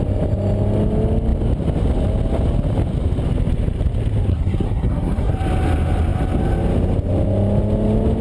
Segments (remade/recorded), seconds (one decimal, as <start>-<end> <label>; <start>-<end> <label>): 0.0-4.3 recorded; 4.3-5.3 remade; 5.3-8.2 recorded